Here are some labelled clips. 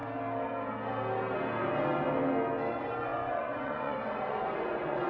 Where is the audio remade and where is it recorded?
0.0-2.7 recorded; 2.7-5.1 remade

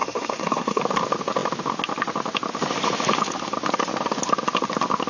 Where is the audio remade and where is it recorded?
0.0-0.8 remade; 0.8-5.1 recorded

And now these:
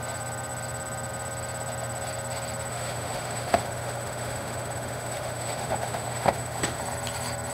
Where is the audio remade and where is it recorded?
0.0-2.7 recorded; 2.7-6.8 remade; 6.8-7.5 recorded